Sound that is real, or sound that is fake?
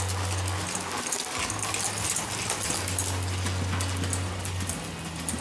real